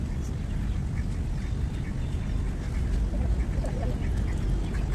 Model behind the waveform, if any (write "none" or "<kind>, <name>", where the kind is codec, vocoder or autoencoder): none